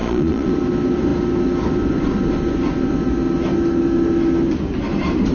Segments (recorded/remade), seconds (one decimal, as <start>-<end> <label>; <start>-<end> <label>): 0.0-0.5 remade; 0.5-5.3 recorded